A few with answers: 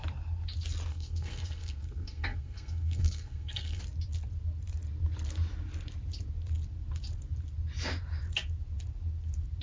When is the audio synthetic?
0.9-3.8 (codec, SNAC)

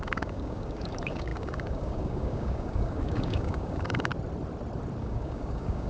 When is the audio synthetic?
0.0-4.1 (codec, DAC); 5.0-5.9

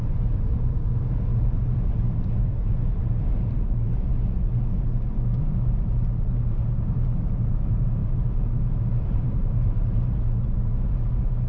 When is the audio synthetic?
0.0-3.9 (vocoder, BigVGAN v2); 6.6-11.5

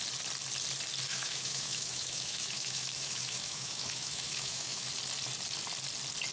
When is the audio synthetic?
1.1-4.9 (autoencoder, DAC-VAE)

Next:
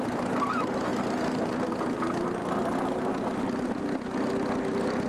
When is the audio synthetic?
0.0-0.9 (vocoder, BigVGAN v2); 1.7-2.4; 3.4-3.8